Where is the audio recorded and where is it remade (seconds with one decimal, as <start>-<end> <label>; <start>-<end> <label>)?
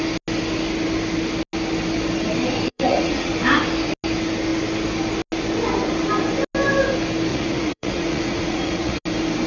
0.0-2.7 recorded; 2.7-3.3 remade; 3.3-7.3 recorded; 7.3-9.0 remade; 9.0-9.5 recorded